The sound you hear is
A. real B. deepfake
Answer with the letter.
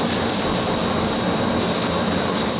B